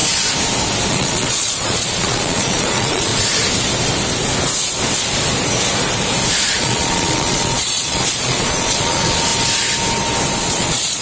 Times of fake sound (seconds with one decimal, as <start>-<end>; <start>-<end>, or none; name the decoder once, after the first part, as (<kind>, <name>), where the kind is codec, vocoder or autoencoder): 0.9-3.1 (vocoder, Vocos); 6.3-9.3; 10.4-11.0